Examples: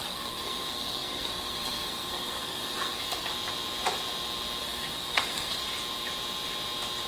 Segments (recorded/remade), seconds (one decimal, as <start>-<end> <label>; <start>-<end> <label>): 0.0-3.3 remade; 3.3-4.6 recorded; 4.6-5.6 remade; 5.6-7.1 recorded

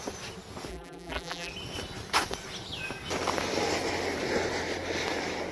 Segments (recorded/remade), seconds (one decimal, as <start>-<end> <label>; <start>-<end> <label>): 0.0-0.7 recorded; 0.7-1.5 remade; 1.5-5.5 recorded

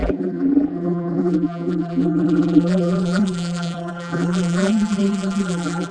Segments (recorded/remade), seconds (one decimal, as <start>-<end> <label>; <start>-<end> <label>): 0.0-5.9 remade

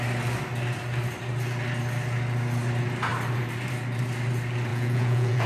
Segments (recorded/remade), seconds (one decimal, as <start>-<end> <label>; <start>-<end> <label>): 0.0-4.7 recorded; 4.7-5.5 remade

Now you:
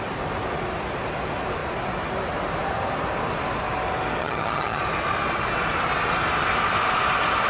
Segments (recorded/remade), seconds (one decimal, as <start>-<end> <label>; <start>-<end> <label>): 0.0-4.2 recorded; 4.2-4.8 remade; 4.8-7.5 recorded